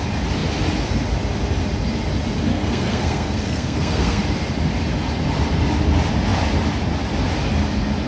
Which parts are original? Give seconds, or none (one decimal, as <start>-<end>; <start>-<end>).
0.0-2.5; 4.2-8.1